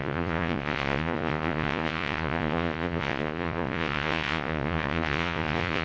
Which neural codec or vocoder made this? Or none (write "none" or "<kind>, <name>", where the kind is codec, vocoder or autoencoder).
vocoder, Vocos